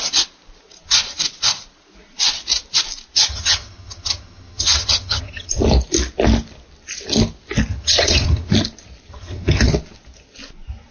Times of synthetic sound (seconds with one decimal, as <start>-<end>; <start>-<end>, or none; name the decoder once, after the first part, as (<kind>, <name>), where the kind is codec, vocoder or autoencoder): 3.3-5.5 (vocoder, HiFi-GAN); 7.7-8.5; 9.1-9.7